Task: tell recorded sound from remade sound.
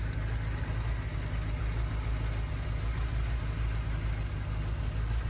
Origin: recorded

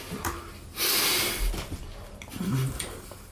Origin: recorded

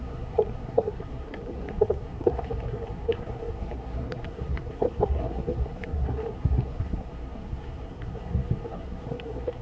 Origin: remade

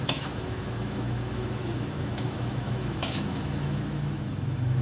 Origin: remade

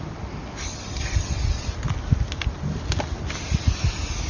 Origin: recorded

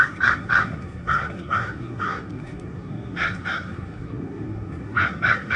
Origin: remade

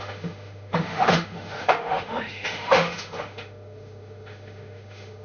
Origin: remade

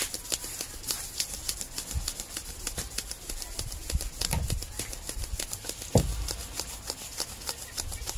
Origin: recorded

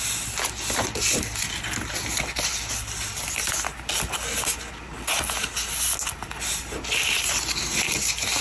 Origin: recorded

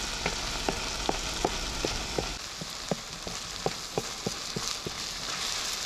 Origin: recorded